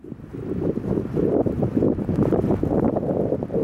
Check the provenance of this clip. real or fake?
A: fake